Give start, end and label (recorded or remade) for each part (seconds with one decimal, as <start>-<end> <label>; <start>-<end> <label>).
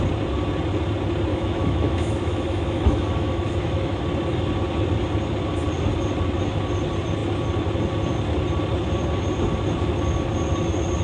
0.0-1.3 recorded; 1.3-4.0 remade; 4.0-11.0 recorded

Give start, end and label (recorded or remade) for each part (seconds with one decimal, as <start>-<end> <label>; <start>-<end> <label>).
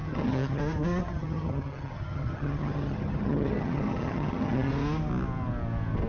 0.0-0.6 remade; 0.6-1.0 recorded; 1.0-4.7 remade; 4.7-6.1 recorded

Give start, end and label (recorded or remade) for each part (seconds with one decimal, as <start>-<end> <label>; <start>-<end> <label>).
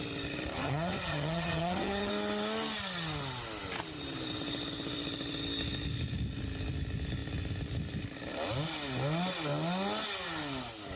0.0-0.6 recorded; 0.6-2.1 remade; 2.1-11.0 recorded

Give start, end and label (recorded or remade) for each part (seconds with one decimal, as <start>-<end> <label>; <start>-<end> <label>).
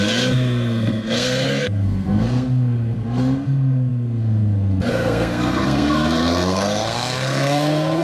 0.0-8.0 remade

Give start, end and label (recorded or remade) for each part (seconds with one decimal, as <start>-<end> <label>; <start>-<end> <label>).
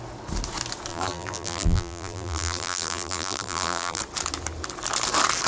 0.0-0.9 recorded; 0.9-4.0 remade; 4.0-5.5 recorded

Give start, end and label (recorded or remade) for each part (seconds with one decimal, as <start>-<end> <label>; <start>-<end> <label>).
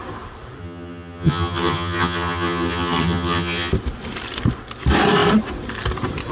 0.0-0.6 recorded; 0.6-3.7 remade; 3.7-6.3 recorded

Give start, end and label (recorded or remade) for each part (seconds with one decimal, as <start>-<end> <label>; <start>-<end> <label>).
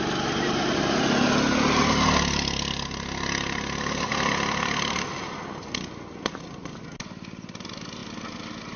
0.0-8.8 recorded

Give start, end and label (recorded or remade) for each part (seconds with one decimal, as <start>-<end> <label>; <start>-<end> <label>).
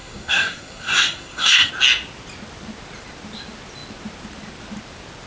0.0-1.7 remade; 1.7-5.3 recorded